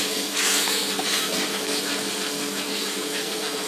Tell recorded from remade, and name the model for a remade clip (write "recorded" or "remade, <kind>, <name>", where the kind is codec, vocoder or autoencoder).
remade, codec, SNAC